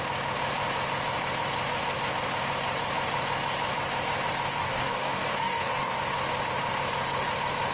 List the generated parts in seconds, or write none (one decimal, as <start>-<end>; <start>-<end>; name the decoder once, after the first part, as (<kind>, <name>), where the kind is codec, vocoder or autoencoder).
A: 4.6-6.0 (codec, DAC)